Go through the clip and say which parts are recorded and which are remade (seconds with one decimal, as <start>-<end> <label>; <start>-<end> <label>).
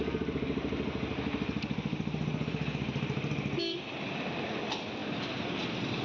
0.0-6.0 recorded